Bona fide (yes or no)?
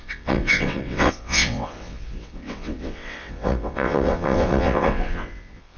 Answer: no